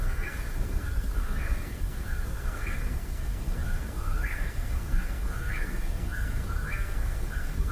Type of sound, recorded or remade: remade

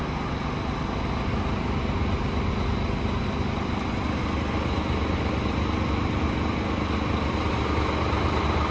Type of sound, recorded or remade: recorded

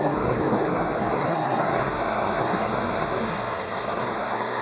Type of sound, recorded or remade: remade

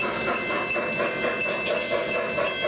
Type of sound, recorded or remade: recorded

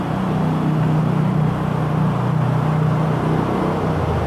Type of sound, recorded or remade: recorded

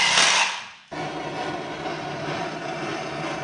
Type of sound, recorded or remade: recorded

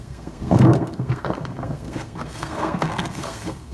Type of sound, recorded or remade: remade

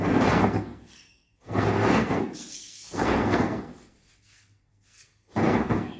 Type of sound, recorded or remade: remade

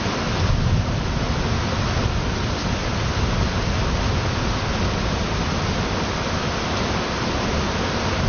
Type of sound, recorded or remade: recorded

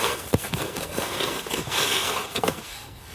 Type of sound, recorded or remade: remade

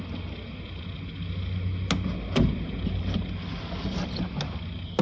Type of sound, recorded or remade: recorded